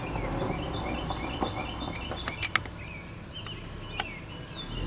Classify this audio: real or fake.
real